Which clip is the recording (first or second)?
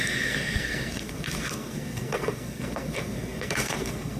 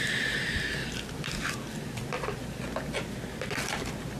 second